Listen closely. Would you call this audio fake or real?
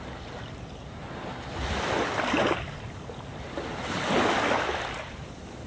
real